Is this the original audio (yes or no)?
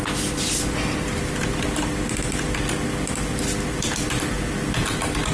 yes